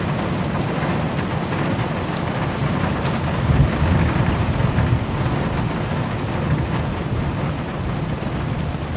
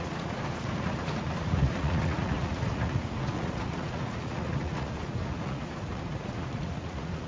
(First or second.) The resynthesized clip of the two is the second